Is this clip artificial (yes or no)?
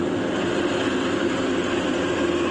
no